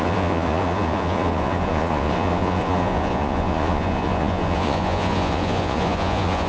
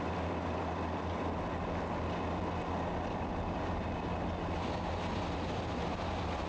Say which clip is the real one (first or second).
second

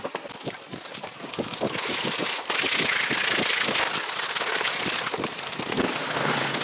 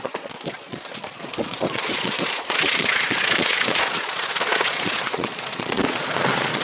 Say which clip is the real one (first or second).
first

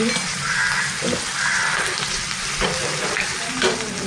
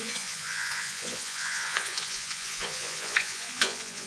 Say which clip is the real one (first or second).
first